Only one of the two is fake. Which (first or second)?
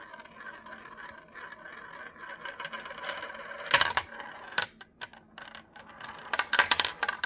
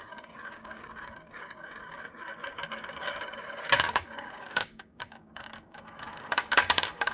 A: second